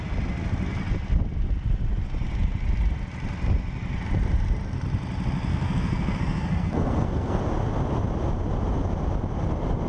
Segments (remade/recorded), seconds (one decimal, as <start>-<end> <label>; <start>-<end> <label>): 0.0-5.5 recorded; 5.5-7.4 remade; 7.4-9.9 recorded